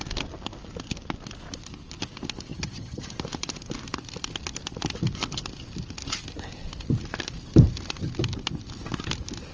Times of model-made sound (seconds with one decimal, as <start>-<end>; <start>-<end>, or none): 2.5-3.0